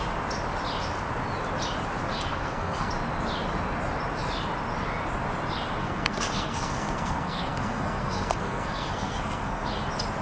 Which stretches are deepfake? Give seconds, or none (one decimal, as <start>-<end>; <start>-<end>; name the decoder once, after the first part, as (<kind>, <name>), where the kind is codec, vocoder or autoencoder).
2.1-2.9 (codec, SNAC); 5.8-9.7